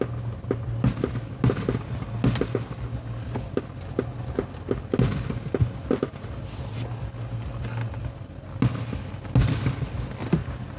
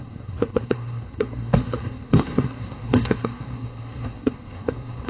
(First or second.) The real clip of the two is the first